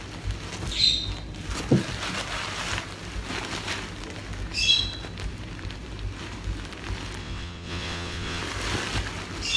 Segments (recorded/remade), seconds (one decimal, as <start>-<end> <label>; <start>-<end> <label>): 0.0-7.2 recorded; 7.2-8.4 remade; 8.4-9.6 recorded